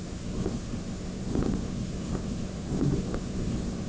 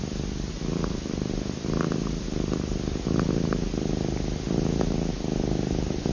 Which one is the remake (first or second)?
first